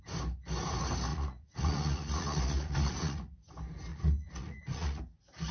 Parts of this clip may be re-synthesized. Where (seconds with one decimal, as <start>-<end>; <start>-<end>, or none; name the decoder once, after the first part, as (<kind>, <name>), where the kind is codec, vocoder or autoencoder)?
1.1-3.5 (vocoder, Vocos); 3.9-5.0